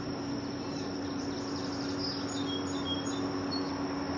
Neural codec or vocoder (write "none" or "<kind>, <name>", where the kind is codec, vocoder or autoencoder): none